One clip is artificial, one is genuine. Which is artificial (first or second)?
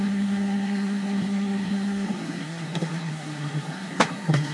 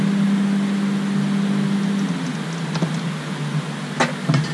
first